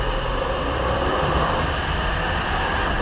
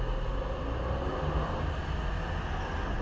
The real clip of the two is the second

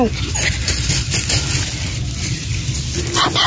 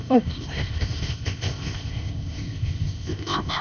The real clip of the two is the first